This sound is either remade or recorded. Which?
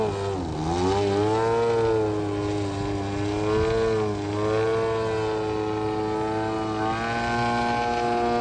recorded